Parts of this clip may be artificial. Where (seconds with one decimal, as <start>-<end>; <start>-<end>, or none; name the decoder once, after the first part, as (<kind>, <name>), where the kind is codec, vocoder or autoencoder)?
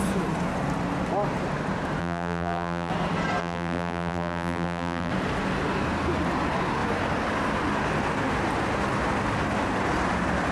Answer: 2.0-2.9 (vocoder, BigVGAN v2); 3.4-5.1